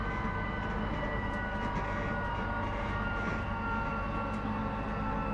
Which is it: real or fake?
real